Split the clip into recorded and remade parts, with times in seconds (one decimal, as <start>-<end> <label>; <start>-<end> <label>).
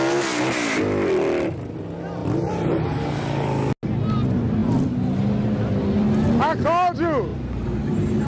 0.0-2.2 recorded; 2.2-3.1 remade; 3.1-7.3 recorded; 7.3-8.3 remade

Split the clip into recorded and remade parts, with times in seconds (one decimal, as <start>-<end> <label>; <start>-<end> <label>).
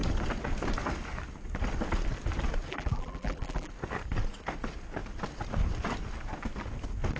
0.0-2.7 recorded; 2.7-3.7 remade; 3.7-7.2 recorded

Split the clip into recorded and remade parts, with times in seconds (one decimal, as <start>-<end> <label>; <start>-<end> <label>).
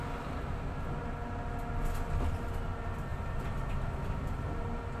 0.0-5.0 recorded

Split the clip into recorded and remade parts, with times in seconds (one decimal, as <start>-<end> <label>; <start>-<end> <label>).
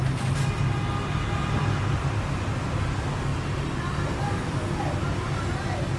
0.0-6.0 recorded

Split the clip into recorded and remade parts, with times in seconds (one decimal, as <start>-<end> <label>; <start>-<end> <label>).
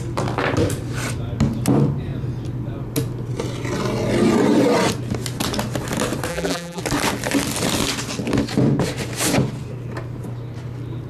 0.0-6.3 recorded; 6.3-6.8 remade; 6.8-11.1 recorded